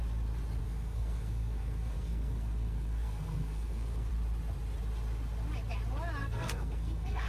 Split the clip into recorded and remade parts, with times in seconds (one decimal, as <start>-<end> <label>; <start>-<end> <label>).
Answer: 0.0-0.6 recorded; 0.6-4.1 remade; 4.1-6.2 recorded; 6.2-7.3 remade